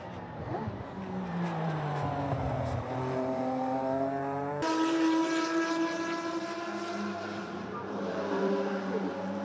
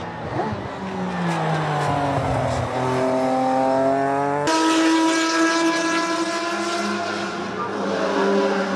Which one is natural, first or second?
second